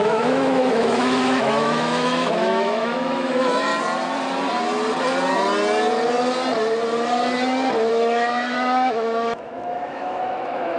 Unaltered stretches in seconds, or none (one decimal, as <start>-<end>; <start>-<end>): 3.7-7.9